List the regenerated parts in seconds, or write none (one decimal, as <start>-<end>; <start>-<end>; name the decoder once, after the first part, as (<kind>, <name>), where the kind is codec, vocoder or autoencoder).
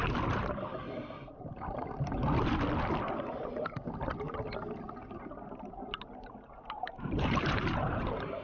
0.0-0.7 (vocoder, BigVGAN v2); 1.3-2.2; 6.5-8.4